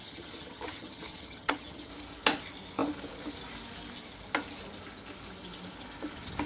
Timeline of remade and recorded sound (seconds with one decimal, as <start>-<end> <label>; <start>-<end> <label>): 0.0-1.9 remade; 1.9-6.5 recorded